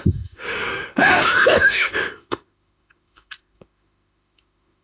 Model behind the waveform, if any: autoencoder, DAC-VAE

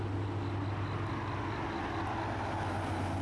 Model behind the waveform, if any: none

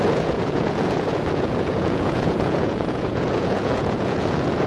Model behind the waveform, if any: vocoder, Vocos